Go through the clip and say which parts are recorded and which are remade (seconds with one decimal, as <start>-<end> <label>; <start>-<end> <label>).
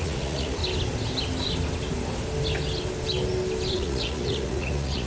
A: 0.0-0.6 remade; 0.6-3.7 recorded; 3.7-5.1 remade